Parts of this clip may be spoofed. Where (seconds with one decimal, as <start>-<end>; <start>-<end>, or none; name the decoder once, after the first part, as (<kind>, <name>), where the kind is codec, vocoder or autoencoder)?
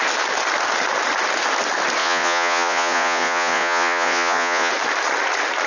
2.0-4.7 (vocoder, Vocos)